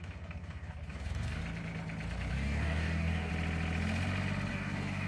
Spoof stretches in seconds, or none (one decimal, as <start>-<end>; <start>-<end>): 0.0-1.4; 2.3-3.3; 4.5-5.1